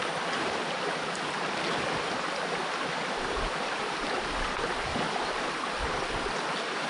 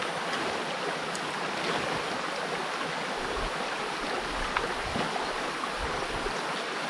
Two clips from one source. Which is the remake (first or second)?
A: first